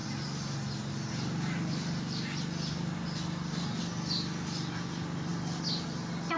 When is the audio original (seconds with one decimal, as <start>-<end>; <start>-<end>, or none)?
0.0-6.4